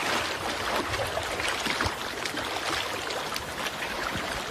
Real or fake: real